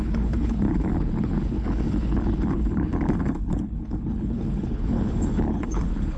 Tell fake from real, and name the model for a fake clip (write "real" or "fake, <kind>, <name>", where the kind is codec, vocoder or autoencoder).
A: fake, codec, HILCodec